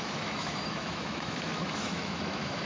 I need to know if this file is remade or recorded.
remade